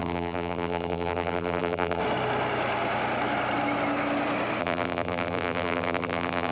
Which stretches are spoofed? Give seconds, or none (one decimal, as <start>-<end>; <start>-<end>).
0.0-2.0; 4.6-6.5